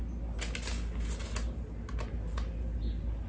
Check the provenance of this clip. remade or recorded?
recorded